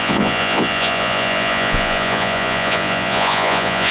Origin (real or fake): fake